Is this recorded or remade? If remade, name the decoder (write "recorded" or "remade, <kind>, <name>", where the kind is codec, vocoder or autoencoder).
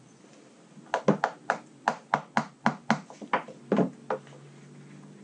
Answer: recorded